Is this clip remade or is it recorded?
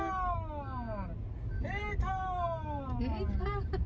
recorded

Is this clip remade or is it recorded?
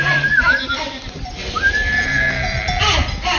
recorded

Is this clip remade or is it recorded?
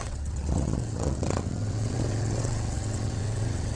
remade